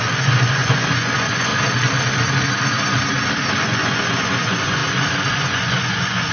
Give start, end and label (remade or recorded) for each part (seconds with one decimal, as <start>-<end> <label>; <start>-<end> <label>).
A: 0.0-1.5 remade; 1.5-3.6 recorded; 3.6-4.8 remade; 4.8-5.3 recorded; 5.3-6.3 remade